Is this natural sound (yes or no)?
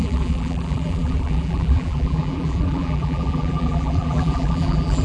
no